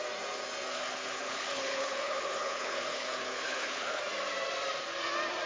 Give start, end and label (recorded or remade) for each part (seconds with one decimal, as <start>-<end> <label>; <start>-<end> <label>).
0.0-0.7 recorded; 0.7-4.0 remade; 4.0-5.5 recorded